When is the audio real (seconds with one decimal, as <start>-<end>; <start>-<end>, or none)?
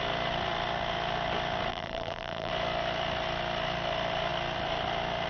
0.0-1.7; 2.5-5.3